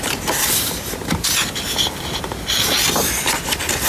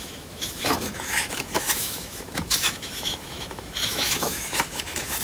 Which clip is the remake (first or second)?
second